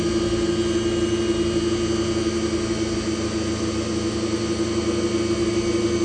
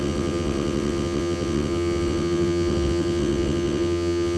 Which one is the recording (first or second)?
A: first